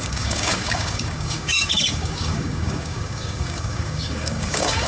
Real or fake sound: fake